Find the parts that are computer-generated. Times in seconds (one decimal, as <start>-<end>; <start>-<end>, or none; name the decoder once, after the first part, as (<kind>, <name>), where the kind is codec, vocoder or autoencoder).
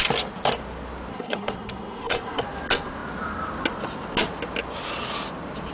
1.1-2.4 (codec, SNAC)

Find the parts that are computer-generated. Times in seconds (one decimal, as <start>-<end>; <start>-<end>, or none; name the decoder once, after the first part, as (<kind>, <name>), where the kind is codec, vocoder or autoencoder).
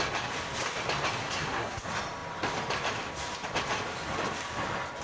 1.2-1.8 (codec, SNAC)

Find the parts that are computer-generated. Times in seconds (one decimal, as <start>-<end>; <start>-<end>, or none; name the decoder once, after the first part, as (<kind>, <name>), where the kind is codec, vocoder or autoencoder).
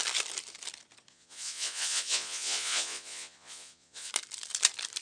1.1-4.1 (vocoder, Vocos)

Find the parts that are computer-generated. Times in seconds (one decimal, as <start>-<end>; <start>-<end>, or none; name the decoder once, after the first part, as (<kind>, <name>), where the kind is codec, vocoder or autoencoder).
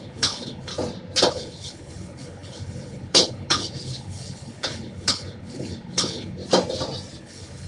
0.0-0.7 (codec, HILCodec); 1.3-6.4; 7.2-7.7